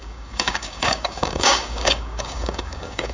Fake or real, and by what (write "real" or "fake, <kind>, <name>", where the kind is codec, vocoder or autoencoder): fake, codec, DAC